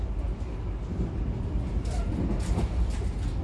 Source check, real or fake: real